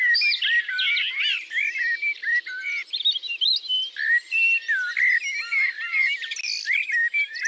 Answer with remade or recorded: recorded